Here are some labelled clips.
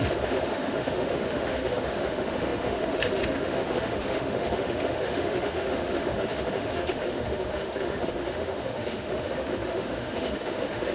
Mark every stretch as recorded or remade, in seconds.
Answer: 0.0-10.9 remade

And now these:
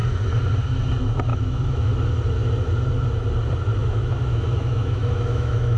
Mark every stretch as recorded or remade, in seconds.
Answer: 0.0-1.3 recorded; 1.3-1.9 remade; 1.9-3.8 recorded; 3.8-5.8 remade